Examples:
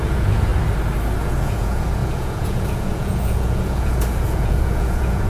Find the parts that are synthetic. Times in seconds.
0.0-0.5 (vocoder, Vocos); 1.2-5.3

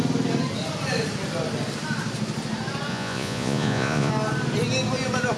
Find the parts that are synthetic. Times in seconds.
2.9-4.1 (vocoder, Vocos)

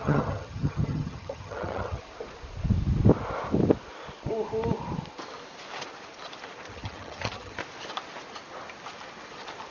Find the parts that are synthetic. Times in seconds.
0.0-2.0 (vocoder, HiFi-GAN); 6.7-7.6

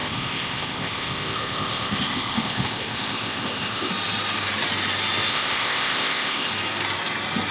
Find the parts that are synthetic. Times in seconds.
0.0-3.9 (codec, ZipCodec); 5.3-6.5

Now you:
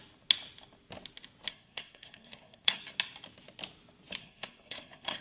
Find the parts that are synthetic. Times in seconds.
1.5-2.8 (codec, SNAC); 4.2-5.2

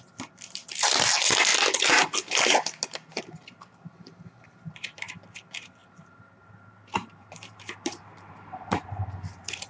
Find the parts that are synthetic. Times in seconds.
5.8-9.1 (vocoder, BigVGAN v2)

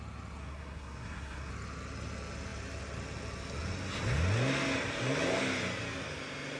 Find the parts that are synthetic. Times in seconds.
0.4-1.5 (codec, SNAC)